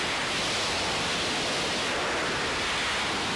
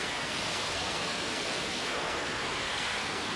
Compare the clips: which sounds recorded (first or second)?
first